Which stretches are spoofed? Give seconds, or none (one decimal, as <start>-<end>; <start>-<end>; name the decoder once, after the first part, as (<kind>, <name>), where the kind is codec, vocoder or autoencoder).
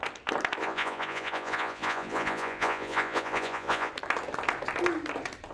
0.6-3.9 (vocoder, Vocos)